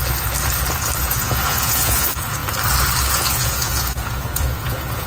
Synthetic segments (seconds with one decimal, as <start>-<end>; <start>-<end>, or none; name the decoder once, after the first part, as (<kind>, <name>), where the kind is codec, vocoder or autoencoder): 1.0-2.4 (vocoder, Vocos); 3.1-5.1